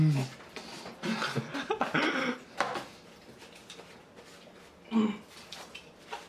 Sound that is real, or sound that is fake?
real